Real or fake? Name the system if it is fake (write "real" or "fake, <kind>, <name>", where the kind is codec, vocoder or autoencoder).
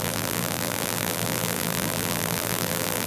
fake, vocoder, BigVGAN v2